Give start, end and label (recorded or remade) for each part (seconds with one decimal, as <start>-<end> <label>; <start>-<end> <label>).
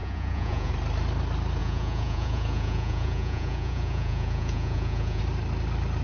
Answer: 0.0-0.7 remade; 0.7-1.6 recorded; 1.6-5.2 remade; 5.2-6.0 recorded